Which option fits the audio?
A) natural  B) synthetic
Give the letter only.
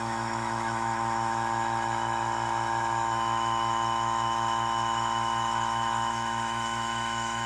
B